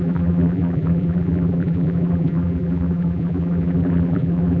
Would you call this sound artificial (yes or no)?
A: yes